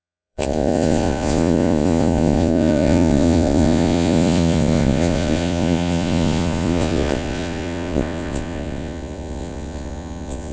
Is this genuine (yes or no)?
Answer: no